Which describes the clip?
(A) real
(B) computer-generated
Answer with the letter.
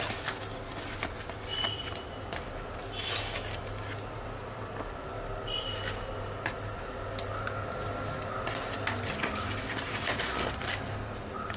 A